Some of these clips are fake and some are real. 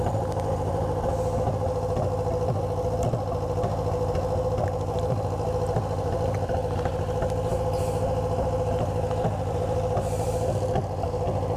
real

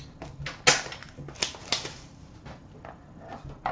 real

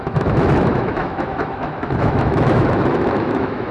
fake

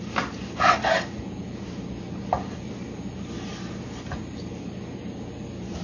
real